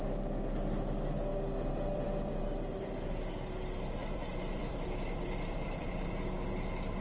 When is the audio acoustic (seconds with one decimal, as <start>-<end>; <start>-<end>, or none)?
0.0-1.3; 2.4-4.0; 6.1-7.0